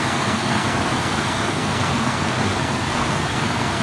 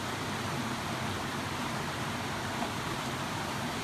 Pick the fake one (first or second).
first